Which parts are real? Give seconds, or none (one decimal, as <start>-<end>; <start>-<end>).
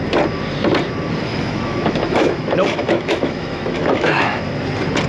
0.0-1.3; 4.4-5.1